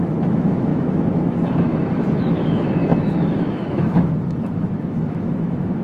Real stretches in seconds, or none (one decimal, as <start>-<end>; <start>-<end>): none